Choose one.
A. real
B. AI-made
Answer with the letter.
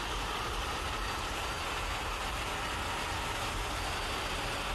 A